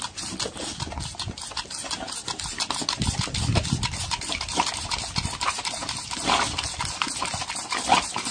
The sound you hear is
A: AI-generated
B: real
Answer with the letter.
B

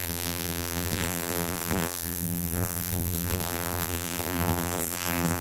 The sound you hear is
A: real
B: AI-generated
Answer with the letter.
B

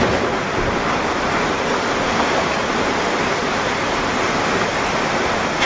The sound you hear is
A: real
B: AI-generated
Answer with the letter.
A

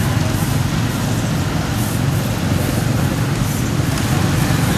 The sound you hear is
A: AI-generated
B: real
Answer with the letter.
B